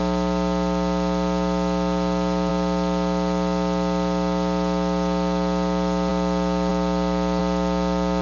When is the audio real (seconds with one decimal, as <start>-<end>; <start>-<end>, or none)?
0.0-8.2